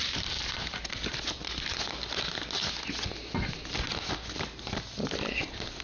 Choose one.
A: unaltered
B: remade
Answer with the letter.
A